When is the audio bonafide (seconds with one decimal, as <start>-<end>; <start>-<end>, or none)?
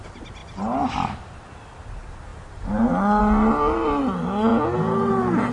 0.0-5.5